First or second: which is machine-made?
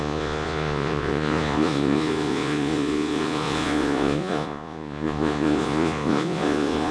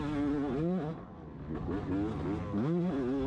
first